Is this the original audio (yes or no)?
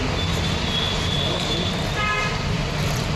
yes